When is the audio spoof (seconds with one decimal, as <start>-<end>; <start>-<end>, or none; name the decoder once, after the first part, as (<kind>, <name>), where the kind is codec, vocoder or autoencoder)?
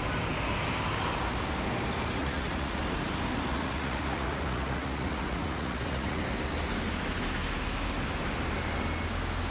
2.2-2.8 (vocoder, Vocos); 3.5-6.2